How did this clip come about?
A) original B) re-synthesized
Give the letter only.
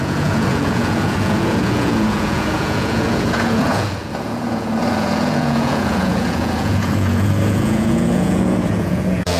B